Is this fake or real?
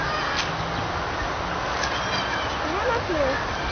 real